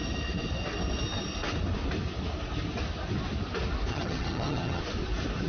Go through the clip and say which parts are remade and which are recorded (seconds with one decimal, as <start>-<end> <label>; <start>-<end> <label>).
0.0-3.9 recorded; 3.9-4.8 remade; 4.8-5.5 recorded